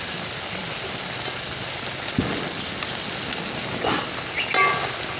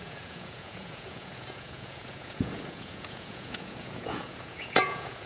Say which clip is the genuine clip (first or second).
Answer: first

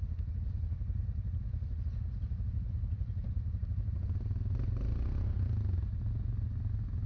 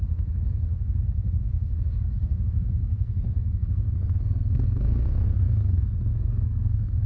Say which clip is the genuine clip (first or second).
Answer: first